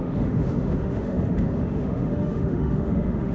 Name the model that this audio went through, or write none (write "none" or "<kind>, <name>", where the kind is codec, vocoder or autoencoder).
autoencoder, DAC-VAE